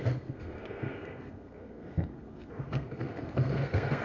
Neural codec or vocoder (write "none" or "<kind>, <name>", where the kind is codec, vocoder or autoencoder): codec, SNAC